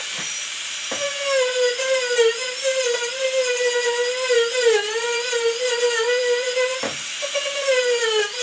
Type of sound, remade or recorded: remade